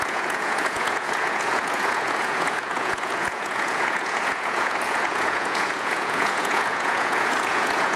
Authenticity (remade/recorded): remade